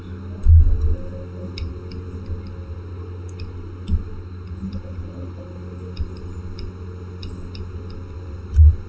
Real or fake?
real